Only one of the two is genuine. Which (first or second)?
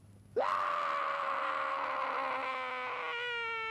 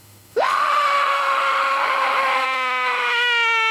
first